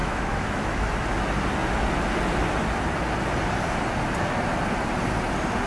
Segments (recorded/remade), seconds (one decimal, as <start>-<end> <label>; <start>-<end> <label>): 0.0-0.9 remade; 0.9-5.7 recorded